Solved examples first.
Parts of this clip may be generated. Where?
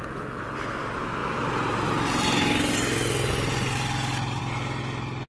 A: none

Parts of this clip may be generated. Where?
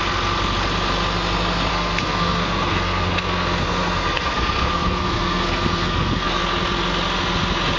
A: 1.7-6.4 (codec, SNAC)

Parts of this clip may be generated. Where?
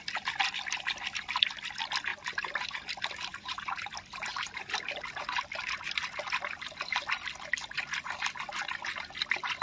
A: 2.1-2.9 (vocoder, BigVGAN v2); 3.3-3.9; 4.3-5.2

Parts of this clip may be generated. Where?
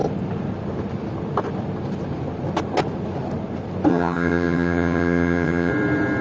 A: 3.9-5.7 (vocoder, HiFi-GAN)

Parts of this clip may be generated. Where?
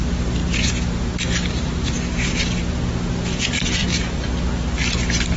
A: 3.8-4.3 (vocoder, BigVGAN v2)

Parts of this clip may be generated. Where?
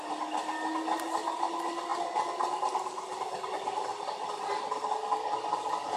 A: none